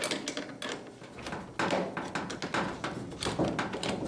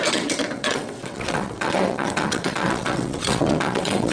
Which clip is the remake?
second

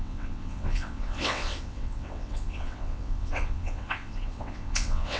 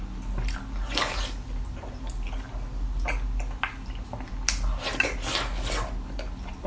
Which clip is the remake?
first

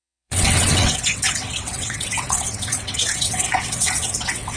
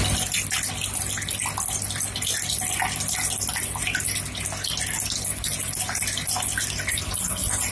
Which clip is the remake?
first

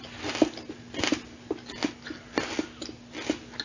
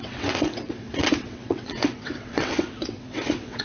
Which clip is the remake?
second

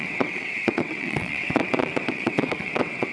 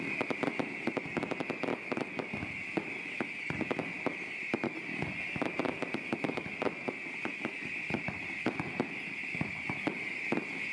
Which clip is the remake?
first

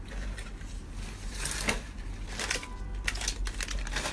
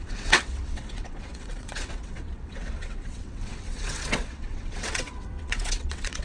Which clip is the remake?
second